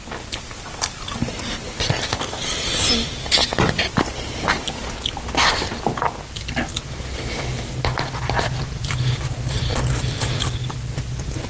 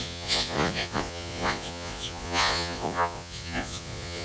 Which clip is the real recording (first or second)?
first